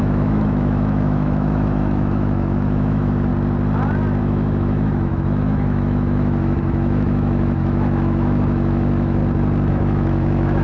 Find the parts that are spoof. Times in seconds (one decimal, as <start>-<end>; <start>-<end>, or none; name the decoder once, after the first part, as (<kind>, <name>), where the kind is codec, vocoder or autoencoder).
0.0-3.3 (autoencoder, DAC-VAE); 4.2-9.2; 9.7-10.6